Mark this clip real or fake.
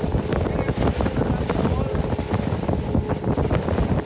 real